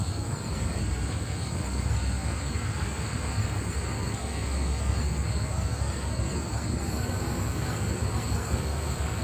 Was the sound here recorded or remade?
remade